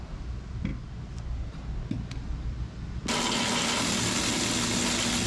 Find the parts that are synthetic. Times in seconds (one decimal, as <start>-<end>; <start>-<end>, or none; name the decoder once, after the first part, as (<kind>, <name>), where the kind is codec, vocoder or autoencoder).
none